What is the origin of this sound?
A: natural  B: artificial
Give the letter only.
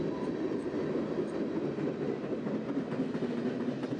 A